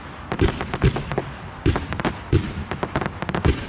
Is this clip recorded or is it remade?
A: recorded